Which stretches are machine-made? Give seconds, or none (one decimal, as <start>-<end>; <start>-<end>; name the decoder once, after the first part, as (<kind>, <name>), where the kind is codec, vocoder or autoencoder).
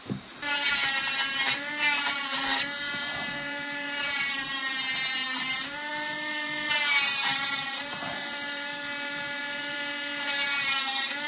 0.0-0.7 (vocoder, BigVGAN v2); 1.4-11.3